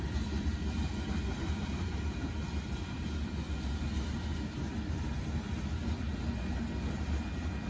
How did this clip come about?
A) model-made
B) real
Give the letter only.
B